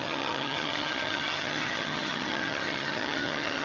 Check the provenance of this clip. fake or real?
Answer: fake